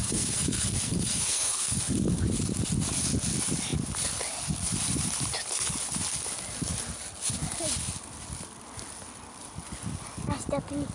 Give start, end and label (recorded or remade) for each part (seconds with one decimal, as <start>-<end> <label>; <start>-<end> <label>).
0.0-1.8 remade; 1.8-10.9 recorded